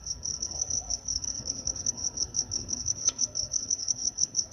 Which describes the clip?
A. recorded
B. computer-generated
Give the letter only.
B